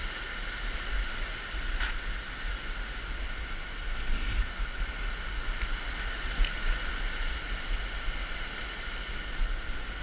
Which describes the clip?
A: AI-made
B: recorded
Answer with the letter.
B